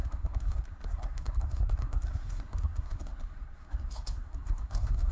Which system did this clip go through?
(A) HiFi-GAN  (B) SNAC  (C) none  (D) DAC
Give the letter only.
B